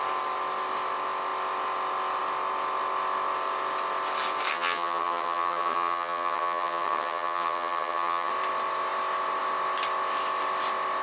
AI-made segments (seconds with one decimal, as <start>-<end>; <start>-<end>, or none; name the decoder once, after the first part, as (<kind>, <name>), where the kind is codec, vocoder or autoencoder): 4.5-8.3 (vocoder, HiFi-GAN)